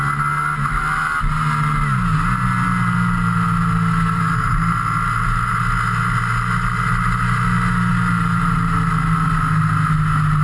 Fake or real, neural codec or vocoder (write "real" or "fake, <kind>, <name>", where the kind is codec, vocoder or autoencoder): real